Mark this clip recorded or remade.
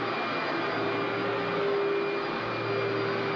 recorded